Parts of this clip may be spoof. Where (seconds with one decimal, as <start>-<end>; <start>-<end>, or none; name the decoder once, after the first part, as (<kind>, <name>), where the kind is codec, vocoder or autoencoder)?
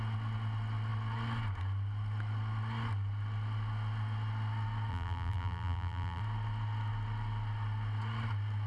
4.9-6.2 (vocoder, BigVGAN v2)